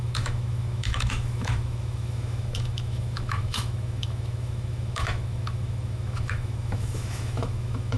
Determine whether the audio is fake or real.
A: fake